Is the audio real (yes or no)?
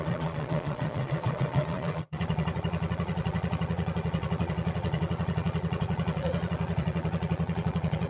no